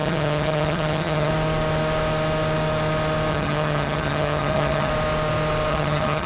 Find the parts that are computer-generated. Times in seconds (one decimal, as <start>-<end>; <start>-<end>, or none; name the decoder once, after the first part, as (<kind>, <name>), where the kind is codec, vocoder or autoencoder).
0.0-1.3 (vocoder, HiFi-GAN); 3.3-4.9; 5.7-6.3

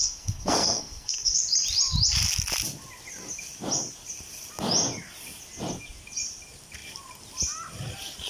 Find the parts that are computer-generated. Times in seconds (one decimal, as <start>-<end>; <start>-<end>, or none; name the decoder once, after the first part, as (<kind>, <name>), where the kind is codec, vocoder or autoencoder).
0.0-1.5 (codec, SNAC)

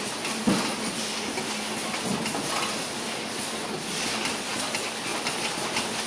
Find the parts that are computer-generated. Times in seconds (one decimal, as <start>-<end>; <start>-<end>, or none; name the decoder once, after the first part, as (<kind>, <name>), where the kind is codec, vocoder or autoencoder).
5.1-6.1 (vocoder, BigVGAN v2)